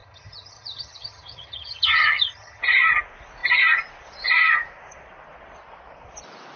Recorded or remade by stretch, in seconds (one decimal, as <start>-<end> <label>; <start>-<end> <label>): 0.0-2.6 remade; 2.6-6.6 recorded

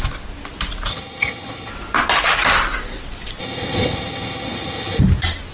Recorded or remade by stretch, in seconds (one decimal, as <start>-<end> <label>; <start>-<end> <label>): 0.0-0.9 recorded; 0.9-1.7 remade; 1.7-3.4 recorded; 3.4-5.0 remade; 5.0-5.5 recorded

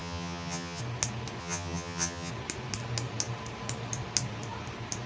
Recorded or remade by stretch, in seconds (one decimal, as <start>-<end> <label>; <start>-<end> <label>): 0.0-0.8 remade; 0.8-1.4 recorded; 1.4-2.3 remade; 2.3-5.1 recorded

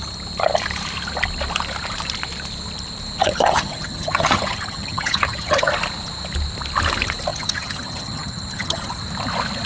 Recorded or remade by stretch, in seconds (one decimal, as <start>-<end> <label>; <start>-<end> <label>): 0.0-3.2 recorded; 3.2-5.7 remade; 5.7-7.3 recorded; 7.3-9.0 remade; 9.0-9.7 recorded

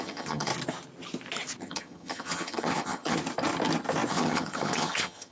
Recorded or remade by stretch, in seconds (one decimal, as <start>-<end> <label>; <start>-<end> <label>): 0.0-0.5 remade; 0.5-1.6 recorded; 1.6-3.2 remade; 3.2-4.1 recorded; 4.1-5.3 remade